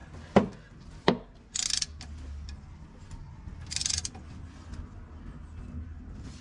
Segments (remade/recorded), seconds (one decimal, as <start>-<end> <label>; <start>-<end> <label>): 0.0-6.4 recorded